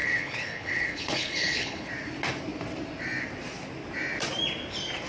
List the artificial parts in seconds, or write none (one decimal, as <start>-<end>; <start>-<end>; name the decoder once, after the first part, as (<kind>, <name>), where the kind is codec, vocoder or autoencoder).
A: 0.0-1.9 (codec, HILCodec)